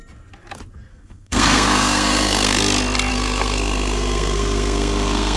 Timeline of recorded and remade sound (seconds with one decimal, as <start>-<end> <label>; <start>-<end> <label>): 0.0-0.9 recorded; 0.9-2.6 remade; 2.6-3.1 recorded; 3.1-5.4 remade